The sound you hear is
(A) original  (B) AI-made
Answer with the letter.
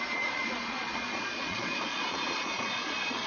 B